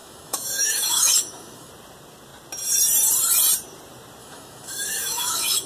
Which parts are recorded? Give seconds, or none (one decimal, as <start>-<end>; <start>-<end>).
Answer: 1.7-4.2